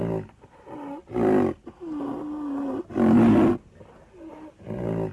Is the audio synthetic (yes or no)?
no